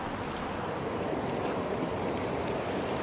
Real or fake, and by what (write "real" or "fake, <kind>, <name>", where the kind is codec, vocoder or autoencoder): real